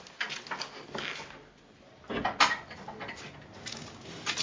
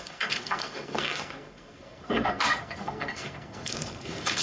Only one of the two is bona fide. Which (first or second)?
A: first